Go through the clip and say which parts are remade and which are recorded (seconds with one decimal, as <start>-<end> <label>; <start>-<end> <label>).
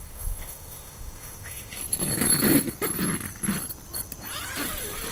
0.0-1.8 remade; 1.8-5.1 recorded